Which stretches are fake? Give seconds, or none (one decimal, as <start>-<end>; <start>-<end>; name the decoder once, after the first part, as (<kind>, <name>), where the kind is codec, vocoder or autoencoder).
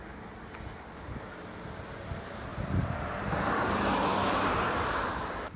2.5-3.1 (vocoder, BigVGAN v2)